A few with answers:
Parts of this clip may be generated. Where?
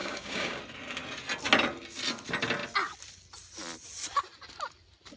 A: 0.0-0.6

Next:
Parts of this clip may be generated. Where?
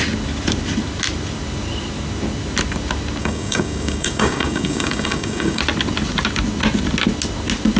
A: 3.2-5.6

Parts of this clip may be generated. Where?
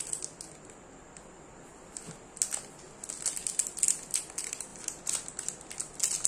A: none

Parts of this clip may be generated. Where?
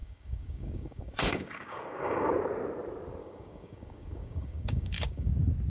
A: 0.0-2.3; 3.2-5.3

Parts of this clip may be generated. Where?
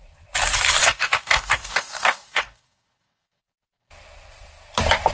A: 0.8-3.9